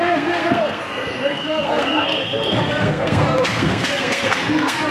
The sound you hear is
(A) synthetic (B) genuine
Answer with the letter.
A